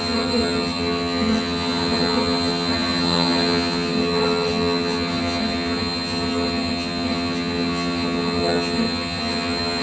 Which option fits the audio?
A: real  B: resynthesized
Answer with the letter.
B